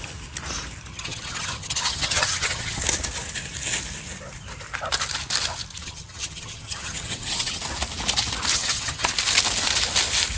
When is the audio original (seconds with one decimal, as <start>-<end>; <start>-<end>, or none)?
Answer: 0.0-0.9; 2.8-5.8; 7.6-8.5; 9.1-10.4

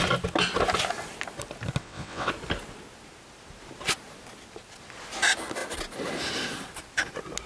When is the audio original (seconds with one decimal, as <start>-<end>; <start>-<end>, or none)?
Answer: 0.0-1.8; 2.3-7.5

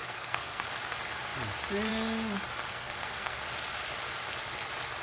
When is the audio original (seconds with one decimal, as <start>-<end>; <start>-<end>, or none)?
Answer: 0.7-2.7; 3.4-5.0

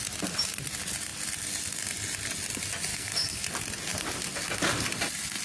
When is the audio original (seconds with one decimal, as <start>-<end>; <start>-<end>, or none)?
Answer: 0.0-2.9; 3.4-5.4